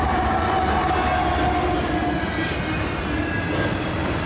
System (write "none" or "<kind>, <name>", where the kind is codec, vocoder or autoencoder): none